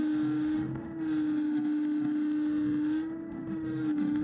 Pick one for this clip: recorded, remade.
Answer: remade